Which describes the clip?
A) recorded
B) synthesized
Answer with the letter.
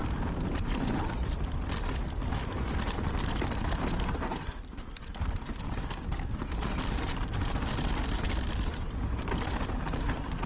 A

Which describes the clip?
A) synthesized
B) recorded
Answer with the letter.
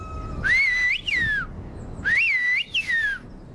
B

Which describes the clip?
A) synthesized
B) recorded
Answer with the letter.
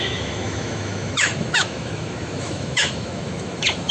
A